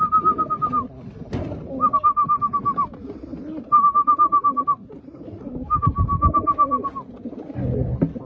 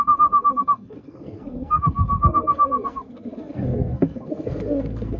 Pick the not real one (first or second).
second